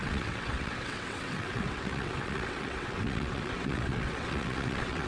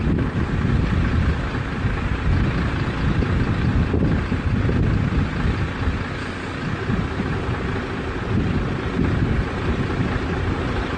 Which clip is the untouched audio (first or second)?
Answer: second